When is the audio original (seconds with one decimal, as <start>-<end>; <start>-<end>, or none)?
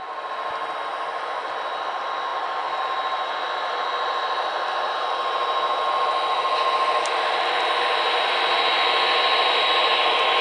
0.0-10.4